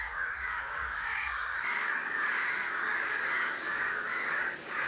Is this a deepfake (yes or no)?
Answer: yes